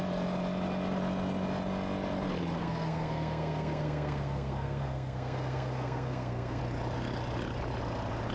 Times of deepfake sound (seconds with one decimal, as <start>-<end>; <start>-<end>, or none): 2.6-6.6